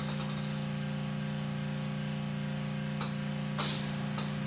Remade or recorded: recorded